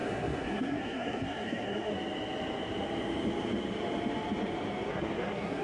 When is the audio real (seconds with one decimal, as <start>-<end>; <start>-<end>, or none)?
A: 1.9-4.9